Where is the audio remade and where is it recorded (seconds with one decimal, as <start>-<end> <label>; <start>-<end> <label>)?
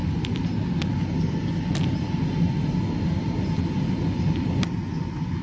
0.0-5.4 recorded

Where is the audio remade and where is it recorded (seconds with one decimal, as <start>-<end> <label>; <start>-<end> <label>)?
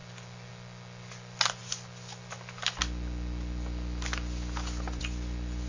0.0-5.7 recorded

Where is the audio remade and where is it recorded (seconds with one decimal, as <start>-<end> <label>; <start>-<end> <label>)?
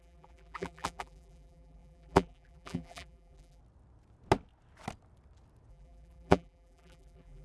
0.0-3.6 remade; 3.6-5.7 recorded; 5.7-7.4 remade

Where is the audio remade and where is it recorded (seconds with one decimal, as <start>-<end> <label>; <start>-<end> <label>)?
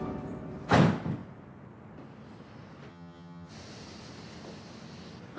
0.0-2.9 recorded; 2.9-3.5 remade; 3.5-5.4 recorded